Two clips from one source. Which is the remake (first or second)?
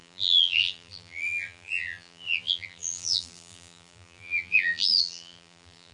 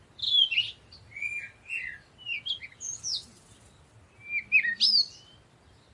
first